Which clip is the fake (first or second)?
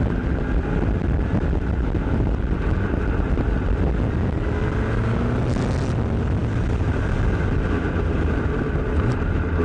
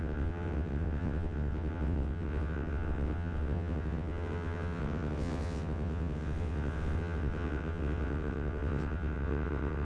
second